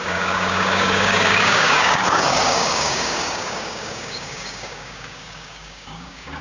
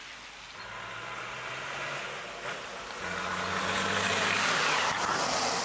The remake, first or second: first